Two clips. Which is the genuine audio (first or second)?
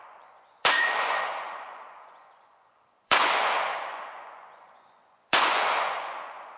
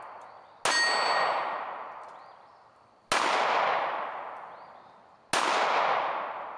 second